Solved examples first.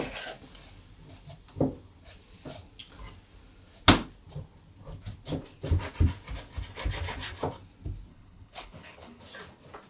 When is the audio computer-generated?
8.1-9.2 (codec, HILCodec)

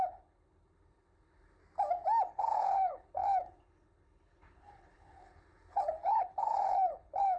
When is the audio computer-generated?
0.0-1.6 (codec, HILCodec); 2.3-7.4

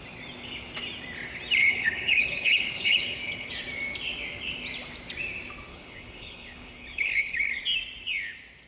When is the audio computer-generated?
1.6-3.5 (codec, HILCodec); 5.7-7.6

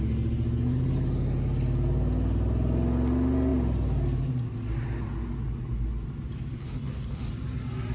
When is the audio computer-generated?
6.6-7.3 (codec, HILCodec)

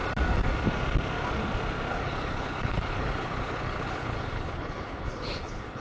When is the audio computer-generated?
1.9-5.8 (codec, HILCodec)

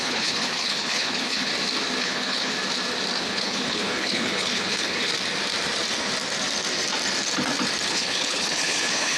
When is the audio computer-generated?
0.0-1.5 (codec, HILCodec); 2.0-2.5; 3.2-5.1; 7.9-9.2

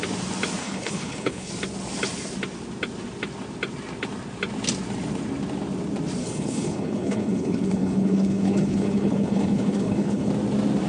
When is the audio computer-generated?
0.6-1.5 (codec, HILCodec); 6.2-10.3

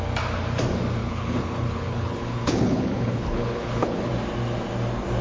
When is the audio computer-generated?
1.0-4.1 (codec, HILCodec)